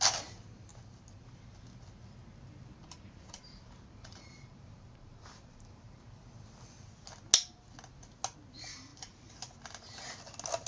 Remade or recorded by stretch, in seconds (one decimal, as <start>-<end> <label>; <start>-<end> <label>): 0.0-2.8 recorded; 2.8-6.2 remade; 6.2-8.9 recorded; 8.9-9.4 remade; 9.4-10.7 recorded